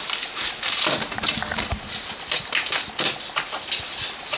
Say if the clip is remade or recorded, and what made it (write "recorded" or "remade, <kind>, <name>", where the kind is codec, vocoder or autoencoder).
recorded